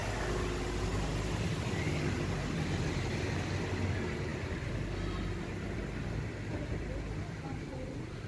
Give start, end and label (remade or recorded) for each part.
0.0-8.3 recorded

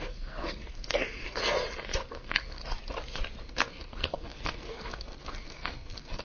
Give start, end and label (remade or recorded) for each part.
0.0-1.4 remade; 1.4-2.1 recorded; 2.1-2.6 remade; 2.6-3.4 recorded; 3.4-6.2 remade

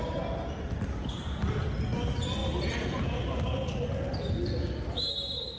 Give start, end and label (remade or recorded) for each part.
0.0-5.6 recorded

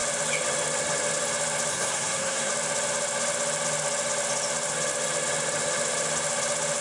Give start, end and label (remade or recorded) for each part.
0.0-1.7 recorded; 1.7-2.5 remade; 2.5-6.8 recorded

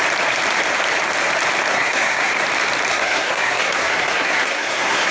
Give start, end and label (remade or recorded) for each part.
0.0-1.7 recorded; 1.7-2.3 remade; 2.3-2.9 recorded; 2.9-5.1 remade